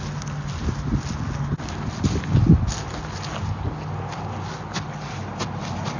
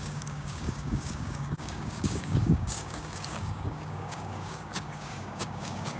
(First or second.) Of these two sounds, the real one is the first